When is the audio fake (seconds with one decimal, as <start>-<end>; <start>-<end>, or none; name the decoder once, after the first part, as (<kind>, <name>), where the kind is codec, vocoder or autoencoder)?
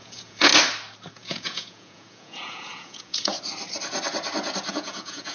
0.0-0.5 (vocoder, Vocos); 1.1-3.3; 4.7-5.3